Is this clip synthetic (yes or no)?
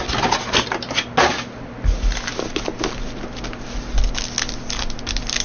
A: no